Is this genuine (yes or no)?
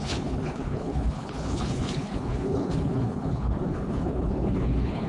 no